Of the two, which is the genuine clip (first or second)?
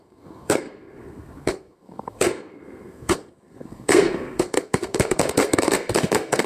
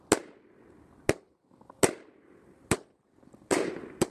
second